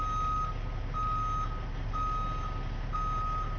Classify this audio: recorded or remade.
recorded